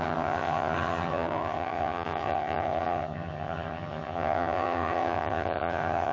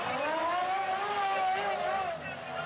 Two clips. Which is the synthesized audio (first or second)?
first